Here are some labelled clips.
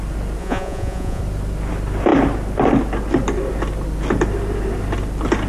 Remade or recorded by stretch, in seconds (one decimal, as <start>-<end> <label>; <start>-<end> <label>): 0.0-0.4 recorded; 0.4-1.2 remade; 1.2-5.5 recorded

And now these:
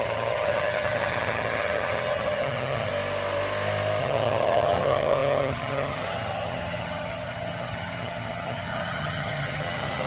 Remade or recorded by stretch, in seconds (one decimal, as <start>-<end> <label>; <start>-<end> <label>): 0.0-2.9 remade; 2.9-4.0 recorded; 4.0-10.1 remade

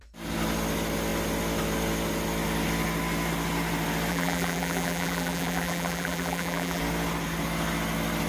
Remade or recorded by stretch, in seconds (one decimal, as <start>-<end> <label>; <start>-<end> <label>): 0.0-4.1 recorded; 4.1-6.8 remade; 6.8-8.3 recorded